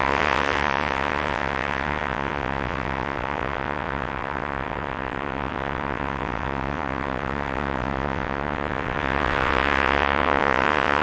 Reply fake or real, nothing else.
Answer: fake